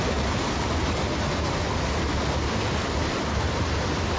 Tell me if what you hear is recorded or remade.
recorded